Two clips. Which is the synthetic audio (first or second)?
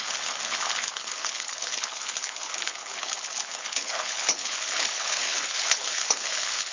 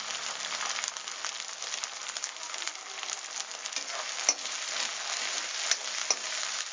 first